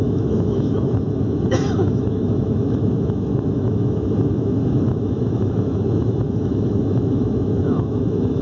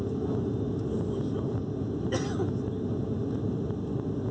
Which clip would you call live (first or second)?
second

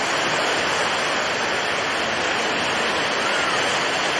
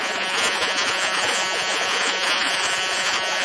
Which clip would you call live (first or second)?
first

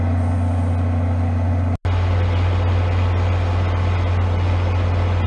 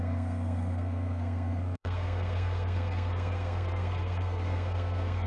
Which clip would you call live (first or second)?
first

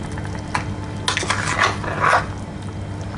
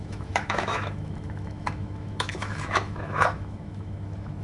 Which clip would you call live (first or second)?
first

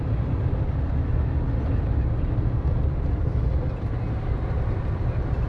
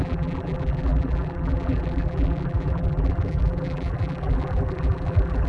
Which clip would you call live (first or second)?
first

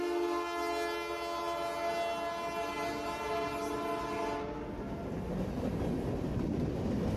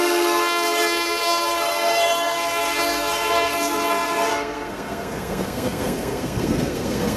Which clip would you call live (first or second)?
first